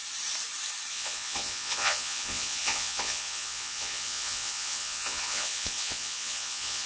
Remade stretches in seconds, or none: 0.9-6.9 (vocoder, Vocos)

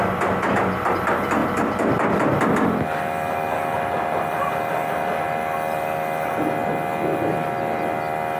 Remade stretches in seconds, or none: none

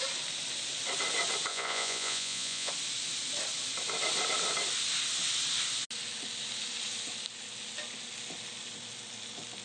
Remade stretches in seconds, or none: 1.5-2.7 (vocoder, Vocos)

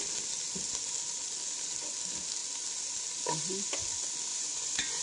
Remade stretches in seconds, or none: 4.3-5.0 (vocoder, Vocos)